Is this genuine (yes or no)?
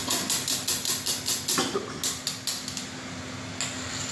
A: yes